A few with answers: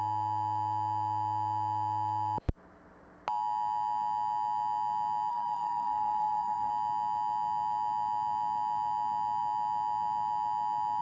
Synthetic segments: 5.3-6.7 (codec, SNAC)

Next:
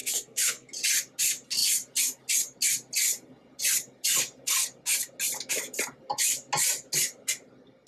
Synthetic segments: 0.0-0.7 (codec, SNAC)

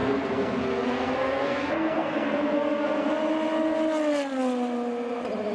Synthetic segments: 0.0-3.1 (codec, SNAC)

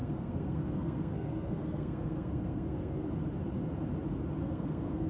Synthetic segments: 0.0-3.1 (codec, SNAC); 4.4-5.1